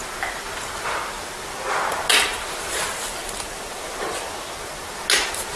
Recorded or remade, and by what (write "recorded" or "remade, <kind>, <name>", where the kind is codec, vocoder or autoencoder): recorded